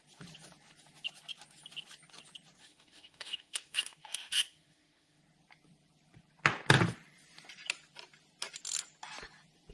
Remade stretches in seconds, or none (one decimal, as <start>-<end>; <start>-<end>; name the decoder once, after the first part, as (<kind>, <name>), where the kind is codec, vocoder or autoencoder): 2.6-5.2 (autoencoder, DAC-VAE)